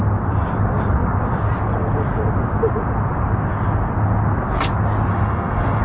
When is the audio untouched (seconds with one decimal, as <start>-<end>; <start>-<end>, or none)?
0.0-5.1